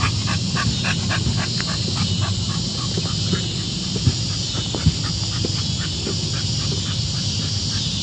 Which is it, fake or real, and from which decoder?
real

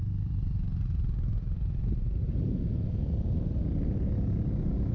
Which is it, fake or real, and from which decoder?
real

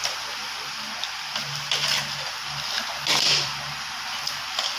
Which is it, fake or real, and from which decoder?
fake, vocoder, BigVGAN v2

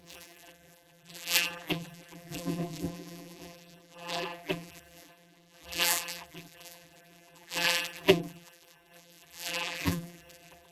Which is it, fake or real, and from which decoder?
fake, vocoder, BigVGAN v2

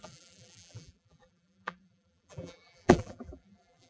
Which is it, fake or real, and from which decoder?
fake, vocoder, BigVGAN v2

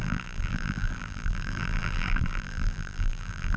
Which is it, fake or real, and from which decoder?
fake, vocoder, BigVGAN v2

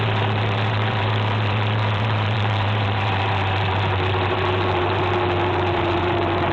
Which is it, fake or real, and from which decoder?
fake, vocoder, BigVGAN v2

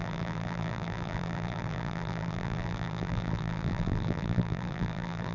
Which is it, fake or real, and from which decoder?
fake, vocoder, BigVGAN v2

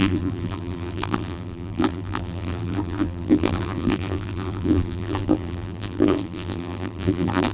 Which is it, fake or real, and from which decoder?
fake, vocoder, BigVGAN v2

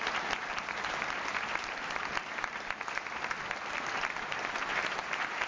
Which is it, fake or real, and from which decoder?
fake, vocoder, BigVGAN v2